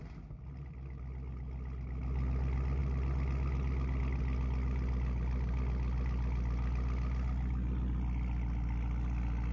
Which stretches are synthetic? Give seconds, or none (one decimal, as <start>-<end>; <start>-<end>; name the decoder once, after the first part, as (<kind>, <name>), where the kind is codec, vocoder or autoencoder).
none